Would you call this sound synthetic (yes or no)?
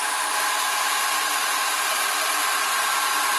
no